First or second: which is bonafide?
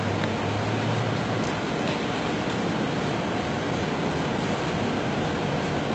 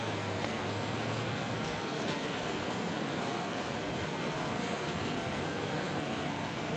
first